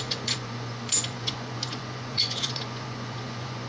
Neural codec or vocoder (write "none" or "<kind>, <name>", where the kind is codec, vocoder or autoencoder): vocoder, Vocos